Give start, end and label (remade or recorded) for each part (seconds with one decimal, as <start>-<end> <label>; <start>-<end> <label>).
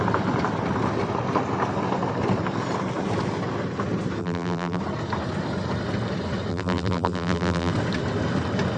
0.0-4.2 recorded; 4.2-4.8 remade; 4.8-6.5 recorded; 6.5-7.7 remade; 7.7-8.8 recorded